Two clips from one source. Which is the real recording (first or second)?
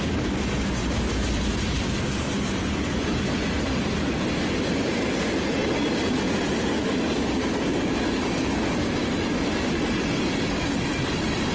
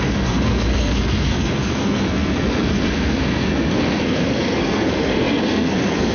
first